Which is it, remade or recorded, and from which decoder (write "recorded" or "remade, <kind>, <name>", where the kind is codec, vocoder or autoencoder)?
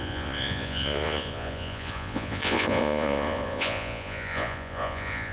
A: remade, vocoder, Vocos